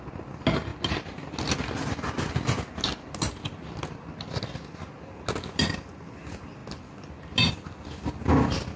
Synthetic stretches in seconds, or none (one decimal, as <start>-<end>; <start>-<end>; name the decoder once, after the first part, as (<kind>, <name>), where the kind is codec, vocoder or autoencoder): none